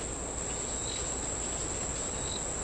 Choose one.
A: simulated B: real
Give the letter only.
B